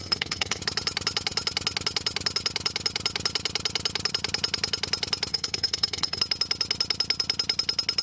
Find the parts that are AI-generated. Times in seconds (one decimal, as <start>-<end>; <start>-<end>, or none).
0.0-0.6; 5.3-6.2